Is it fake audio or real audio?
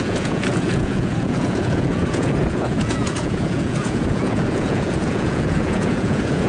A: fake